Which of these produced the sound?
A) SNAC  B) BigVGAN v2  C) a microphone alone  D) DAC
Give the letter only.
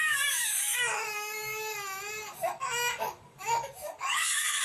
D